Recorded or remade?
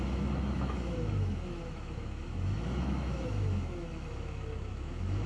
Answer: remade